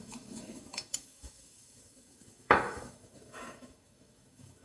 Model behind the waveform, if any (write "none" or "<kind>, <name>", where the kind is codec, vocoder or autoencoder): autoencoder, DAC-VAE